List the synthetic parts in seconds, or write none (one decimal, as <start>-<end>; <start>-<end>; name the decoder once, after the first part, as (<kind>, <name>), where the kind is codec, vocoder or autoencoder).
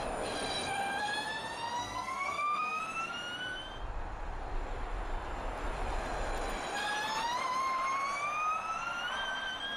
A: 1.8-2.8 (codec, SNAC)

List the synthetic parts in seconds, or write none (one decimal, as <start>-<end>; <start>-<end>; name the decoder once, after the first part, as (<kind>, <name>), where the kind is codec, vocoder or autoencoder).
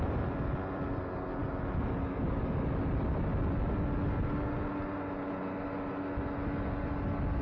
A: none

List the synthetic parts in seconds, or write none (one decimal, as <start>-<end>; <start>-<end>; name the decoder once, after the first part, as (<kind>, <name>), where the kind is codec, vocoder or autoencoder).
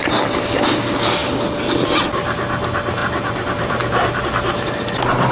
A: none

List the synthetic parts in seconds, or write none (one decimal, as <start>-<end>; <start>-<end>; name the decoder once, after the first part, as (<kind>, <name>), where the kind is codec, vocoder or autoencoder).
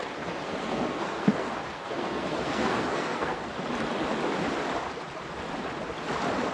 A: 0.0-3.5 (codec, SNAC)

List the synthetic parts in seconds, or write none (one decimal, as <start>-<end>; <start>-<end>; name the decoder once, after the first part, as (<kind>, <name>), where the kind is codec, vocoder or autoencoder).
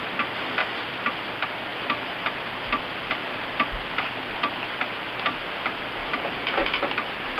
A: none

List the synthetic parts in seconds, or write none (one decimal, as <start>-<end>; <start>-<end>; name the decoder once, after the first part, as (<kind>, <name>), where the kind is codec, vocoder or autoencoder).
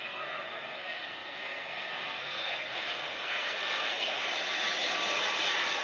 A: 0.0-4.2 (codec, SNAC)